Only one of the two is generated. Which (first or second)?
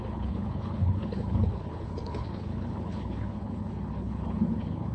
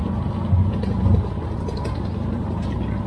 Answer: first